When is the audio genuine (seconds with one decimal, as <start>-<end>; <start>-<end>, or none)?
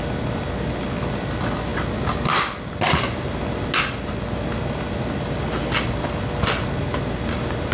0.0-7.7